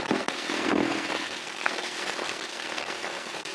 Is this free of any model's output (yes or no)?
no